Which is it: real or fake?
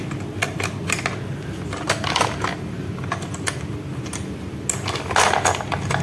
real